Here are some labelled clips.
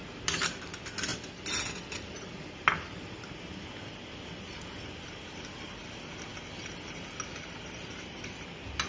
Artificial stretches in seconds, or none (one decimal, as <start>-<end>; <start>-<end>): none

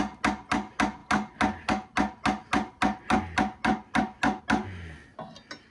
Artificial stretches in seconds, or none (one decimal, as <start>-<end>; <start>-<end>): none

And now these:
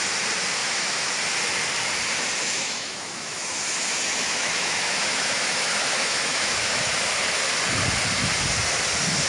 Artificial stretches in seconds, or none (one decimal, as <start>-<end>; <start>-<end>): 0.6-1.1; 2.4-7.1

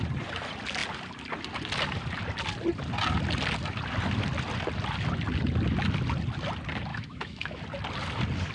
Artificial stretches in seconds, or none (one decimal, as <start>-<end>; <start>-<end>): 6.9-7.6

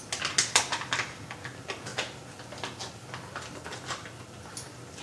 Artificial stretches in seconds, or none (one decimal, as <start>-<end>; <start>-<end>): none

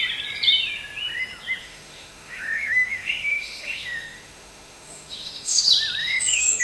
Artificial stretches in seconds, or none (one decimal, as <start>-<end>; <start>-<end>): 1.6-5.6; 6.0-6.6